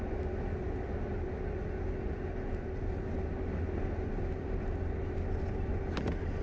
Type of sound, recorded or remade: recorded